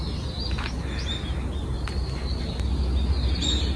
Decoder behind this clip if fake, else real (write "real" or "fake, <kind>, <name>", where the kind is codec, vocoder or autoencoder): real